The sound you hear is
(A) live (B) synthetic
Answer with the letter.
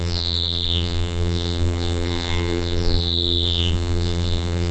B